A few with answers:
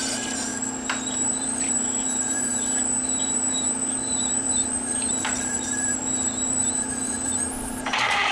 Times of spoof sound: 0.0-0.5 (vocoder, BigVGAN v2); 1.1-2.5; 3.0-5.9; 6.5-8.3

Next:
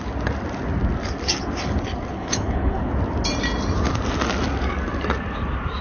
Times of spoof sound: 2.1-2.9 (codec, HILCodec)

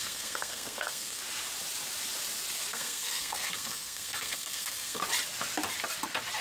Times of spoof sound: 0.0-1.2 (codec, SNAC); 2.7-5.0

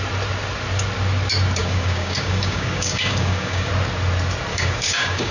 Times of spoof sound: 1.6-3.7 (codec, DAC); 4.5-5.3

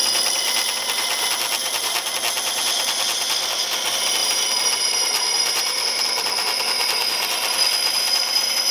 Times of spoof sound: 1.6-2.1 (vocoder, BigVGAN v2); 4.2-6.0

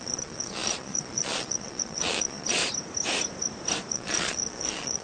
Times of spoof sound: 0.0-2.6 (vocoder, Vocos); 3.9-5.0

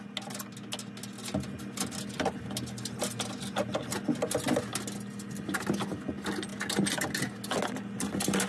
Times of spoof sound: none

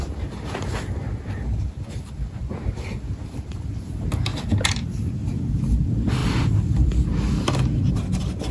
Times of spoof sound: 0.0-4.3 (vocoder, BigVGAN v2); 5.5-8.5